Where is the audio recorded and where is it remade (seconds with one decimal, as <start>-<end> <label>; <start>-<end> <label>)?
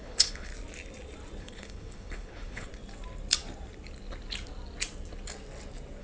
0.0-0.5 remade; 0.5-1.4 recorded; 1.4-2.7 remade; 2.7-6.0 recorded